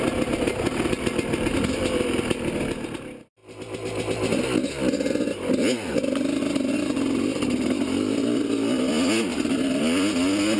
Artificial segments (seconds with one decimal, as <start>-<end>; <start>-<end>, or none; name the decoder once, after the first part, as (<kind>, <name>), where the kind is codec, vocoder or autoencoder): 9.3-9.8 (vocoder, BigVGAN v2)